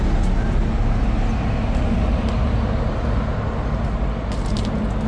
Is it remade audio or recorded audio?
recorded